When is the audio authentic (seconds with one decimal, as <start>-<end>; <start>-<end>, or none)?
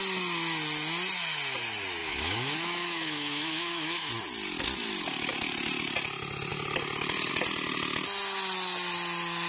0.0-2.0; 4.1-9.5